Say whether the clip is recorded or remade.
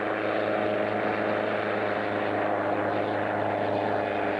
recorded